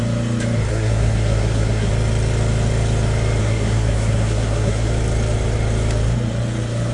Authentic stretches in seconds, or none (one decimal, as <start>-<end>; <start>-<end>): 0.0-0.7; 1.9-3.4; 4.9-6.9